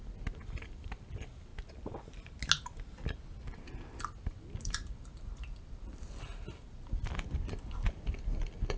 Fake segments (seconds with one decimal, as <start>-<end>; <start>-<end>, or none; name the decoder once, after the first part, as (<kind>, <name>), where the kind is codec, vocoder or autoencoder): 0.0-1.5 (vocoder, BigVGAN v2); 4.0-8.8